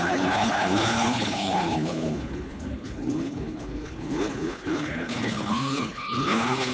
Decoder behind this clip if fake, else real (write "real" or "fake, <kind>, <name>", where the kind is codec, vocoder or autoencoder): fake, codec, HILCodec